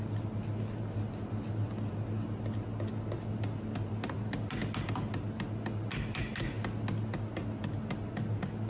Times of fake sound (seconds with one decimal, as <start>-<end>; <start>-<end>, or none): none